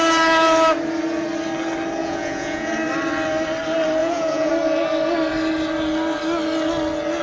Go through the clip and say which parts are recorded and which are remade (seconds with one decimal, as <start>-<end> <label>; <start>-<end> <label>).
0.0-2.0 recorded; 2.0-2.7 remade; 2.7-4.0 recorded; 4.0-4.5 remade; 4.5-7.2 recorded